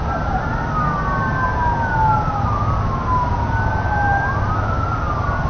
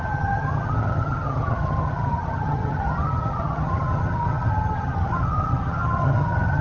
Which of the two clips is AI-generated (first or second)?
second